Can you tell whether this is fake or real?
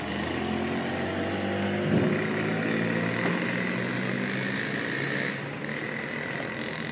real